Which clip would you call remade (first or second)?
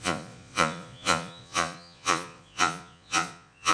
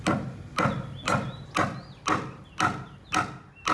first